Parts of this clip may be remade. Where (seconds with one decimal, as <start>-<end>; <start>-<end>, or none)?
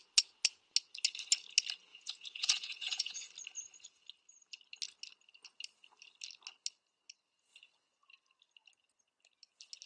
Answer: 1.9-3.3